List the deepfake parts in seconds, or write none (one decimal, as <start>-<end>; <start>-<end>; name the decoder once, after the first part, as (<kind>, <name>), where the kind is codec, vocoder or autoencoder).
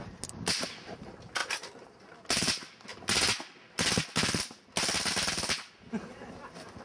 none